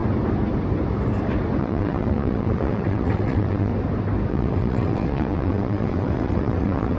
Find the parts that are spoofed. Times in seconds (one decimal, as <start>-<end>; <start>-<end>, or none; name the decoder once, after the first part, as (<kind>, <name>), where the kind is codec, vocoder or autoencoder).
1.6-3.7 (vocoder, WaveNeXt); 4.3-7.0